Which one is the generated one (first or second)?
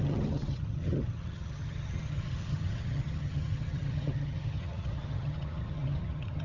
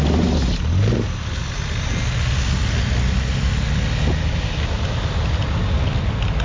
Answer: first